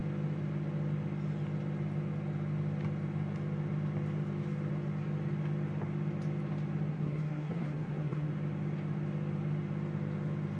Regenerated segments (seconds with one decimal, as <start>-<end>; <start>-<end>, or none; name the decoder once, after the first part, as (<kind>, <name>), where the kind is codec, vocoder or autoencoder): 6.9-8.3 (codec, SNAC)